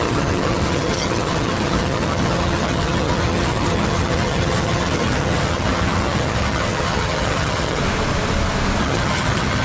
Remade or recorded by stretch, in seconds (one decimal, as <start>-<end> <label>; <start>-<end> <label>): 0.0-7.8 remade; 7.8-8.8 recorded; 8.8-9.6 remade